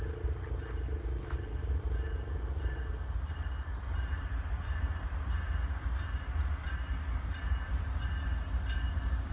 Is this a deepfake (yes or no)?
no